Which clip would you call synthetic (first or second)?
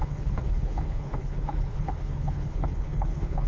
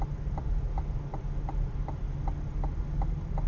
first